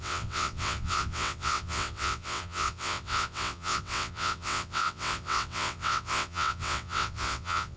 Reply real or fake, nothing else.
fake